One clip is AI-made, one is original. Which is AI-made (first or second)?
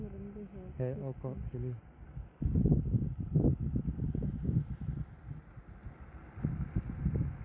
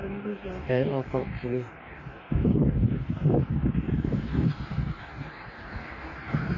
second